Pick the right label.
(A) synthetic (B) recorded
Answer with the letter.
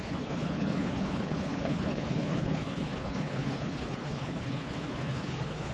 A